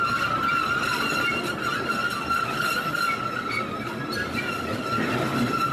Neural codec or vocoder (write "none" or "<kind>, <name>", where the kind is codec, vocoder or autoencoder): none